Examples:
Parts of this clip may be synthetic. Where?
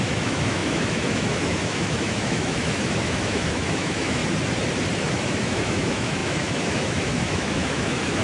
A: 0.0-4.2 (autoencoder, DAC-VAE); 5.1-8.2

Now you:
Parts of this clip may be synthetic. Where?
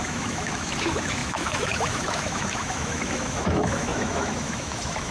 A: 0.0-5.1 (autoencoder, DAC-VAE)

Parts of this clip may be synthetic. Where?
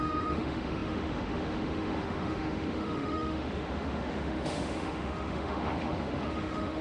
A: 0.0-6.8 (autoencoder, DAC-VAE)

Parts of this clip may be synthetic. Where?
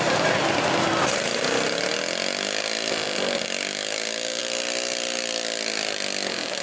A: none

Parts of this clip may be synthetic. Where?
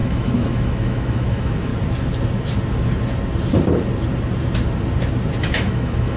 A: 0.0-1.7 (autoencoder, DAC-VAE); 5.4-6.2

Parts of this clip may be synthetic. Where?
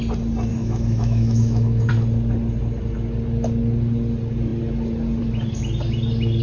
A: 0.5-1.9 (autoencoder, DAC-VAE)